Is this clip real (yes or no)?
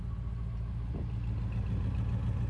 yes